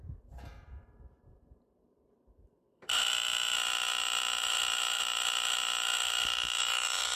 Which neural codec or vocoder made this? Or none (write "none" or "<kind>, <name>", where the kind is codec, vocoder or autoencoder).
vocoder, BigVGAN v2